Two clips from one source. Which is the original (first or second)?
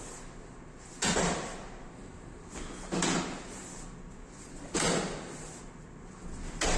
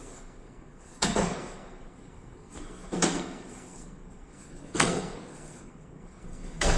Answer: first